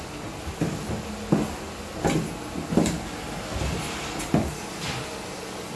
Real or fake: real